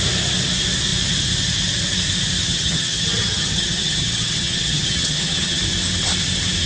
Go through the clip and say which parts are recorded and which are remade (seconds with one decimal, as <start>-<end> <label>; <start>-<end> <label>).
0.0-2.4 recorded; 2.4-5.6 remade; 5.6-6.7 recorded